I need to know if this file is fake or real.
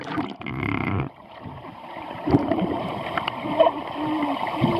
fake